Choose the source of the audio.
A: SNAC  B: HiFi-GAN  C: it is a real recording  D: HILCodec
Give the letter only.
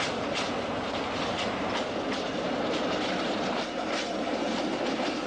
C